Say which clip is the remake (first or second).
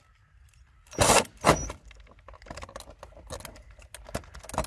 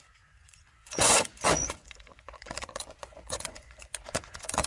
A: second